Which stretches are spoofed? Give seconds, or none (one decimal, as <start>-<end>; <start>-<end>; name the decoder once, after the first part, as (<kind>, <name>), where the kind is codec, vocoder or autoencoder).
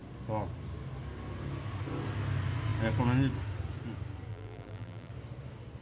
4.3-5.1 (vocoder, BigVGAN v2)